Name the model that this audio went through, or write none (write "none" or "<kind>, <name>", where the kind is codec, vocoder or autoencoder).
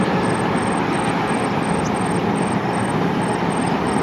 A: none